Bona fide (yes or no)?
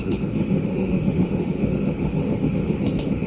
no